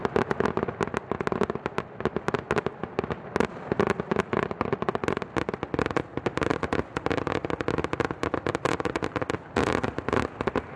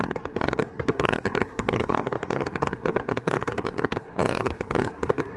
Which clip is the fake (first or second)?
second